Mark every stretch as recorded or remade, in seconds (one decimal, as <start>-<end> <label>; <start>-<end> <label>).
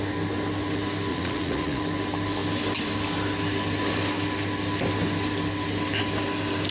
0.0-1.1 recorded; 1.1-1.8 remade; 1.8-6.7 recorded